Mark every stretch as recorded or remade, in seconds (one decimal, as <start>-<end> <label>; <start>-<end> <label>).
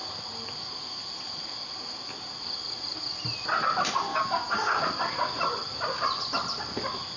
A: 0.0-4.1 recorded; 4.1-4.8 remade; 4.8-7.2 recorded